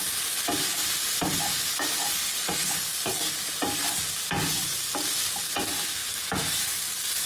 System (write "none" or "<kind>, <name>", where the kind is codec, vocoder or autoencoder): none